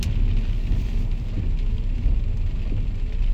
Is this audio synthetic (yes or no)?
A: no